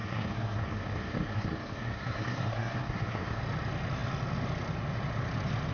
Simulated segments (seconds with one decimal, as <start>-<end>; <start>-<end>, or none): 0.0-3.4